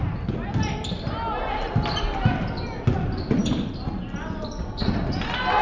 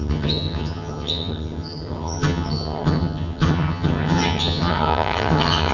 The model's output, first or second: second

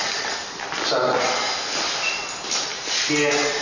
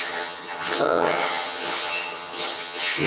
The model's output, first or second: second